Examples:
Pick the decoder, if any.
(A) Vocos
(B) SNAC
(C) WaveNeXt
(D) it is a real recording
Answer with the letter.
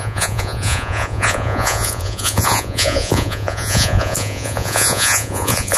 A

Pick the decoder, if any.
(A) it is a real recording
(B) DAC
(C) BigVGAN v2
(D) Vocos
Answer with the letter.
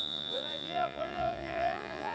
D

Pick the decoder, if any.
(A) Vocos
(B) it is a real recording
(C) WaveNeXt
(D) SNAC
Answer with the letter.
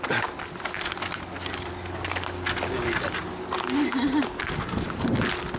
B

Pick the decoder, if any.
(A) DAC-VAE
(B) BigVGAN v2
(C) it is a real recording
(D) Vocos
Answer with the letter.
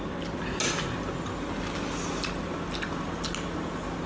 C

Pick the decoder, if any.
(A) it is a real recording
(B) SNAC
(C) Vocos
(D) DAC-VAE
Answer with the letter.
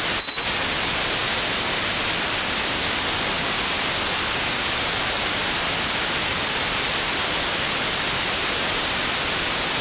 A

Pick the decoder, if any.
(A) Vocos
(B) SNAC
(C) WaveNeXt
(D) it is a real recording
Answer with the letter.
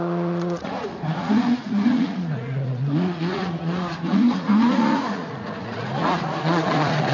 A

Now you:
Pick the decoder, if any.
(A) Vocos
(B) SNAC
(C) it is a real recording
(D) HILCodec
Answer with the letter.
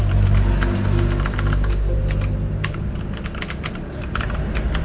C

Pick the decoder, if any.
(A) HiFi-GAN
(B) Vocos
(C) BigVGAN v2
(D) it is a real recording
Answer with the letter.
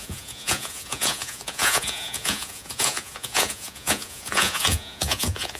B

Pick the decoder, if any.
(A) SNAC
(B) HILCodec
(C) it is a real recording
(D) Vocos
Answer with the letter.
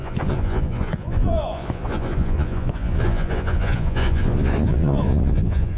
D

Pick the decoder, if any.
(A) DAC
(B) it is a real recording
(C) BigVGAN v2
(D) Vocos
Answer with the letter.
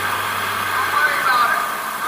B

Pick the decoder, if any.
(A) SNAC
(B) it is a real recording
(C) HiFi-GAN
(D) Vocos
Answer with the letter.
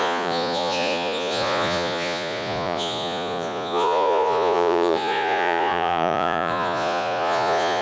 D